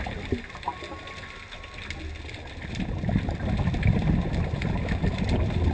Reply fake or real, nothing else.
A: real